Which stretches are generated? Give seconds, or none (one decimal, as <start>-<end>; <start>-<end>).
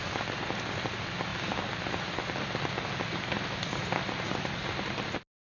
none